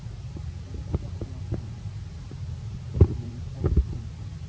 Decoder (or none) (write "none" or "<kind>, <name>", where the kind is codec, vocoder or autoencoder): none